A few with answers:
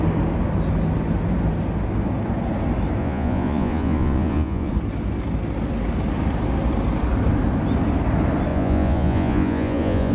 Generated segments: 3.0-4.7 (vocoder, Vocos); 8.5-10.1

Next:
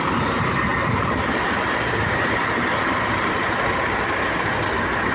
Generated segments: none